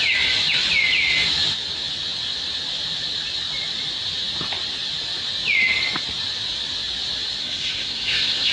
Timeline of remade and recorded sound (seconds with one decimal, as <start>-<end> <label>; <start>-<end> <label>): 0.0-7.4 recorded; 7.4-8.5 remade

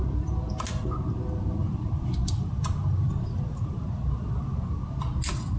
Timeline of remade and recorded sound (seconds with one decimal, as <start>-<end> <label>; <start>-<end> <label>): 0.0-1.6 recorded; 1.6-4.5 remade; 4.5-5.6 recorded